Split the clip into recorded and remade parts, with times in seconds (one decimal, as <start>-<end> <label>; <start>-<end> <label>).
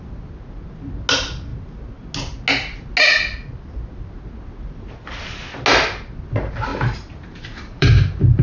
0.0-6.7 recorded; 6.7-8.4 remade